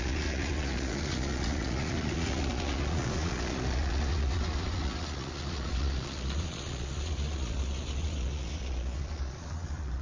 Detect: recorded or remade remade